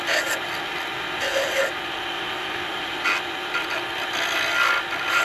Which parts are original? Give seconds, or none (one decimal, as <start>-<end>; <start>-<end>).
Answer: 0.0-5.2